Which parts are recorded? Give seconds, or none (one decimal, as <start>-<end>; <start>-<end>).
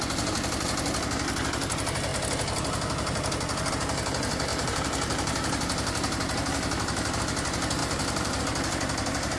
0.0-4.5; 7.2-7.8; 8.4-9.4